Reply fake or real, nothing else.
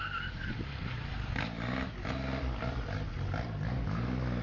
real